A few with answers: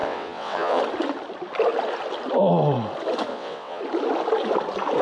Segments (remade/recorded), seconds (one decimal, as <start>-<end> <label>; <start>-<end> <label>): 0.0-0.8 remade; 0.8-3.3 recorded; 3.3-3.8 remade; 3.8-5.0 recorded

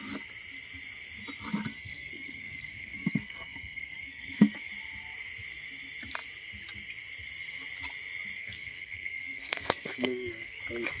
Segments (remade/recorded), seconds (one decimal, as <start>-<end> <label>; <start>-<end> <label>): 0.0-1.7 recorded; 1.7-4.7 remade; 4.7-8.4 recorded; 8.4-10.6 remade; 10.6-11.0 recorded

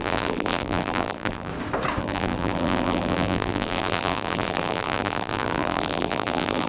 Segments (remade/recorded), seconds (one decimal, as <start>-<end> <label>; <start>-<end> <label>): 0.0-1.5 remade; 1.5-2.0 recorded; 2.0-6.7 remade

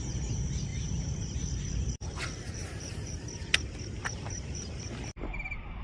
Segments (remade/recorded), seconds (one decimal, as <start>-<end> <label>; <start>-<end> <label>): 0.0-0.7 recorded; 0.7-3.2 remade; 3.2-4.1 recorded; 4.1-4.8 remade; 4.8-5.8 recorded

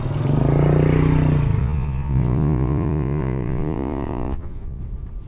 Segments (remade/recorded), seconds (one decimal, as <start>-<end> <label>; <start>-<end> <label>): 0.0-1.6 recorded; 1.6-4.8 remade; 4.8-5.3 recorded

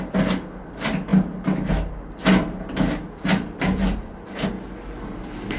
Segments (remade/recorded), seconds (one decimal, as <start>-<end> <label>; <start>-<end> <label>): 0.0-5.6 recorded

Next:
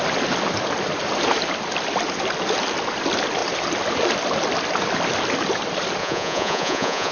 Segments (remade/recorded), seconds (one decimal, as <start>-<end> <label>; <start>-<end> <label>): 0.0-6.0 recorded; 6.0-7.1 remade

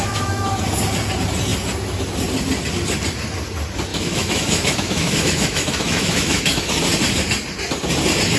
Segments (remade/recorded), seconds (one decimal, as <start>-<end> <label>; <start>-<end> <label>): 0.0-0.5 remade; 0.5-3.9 recorded; 3.9-6.7 remade; 6.7-8.4 recorded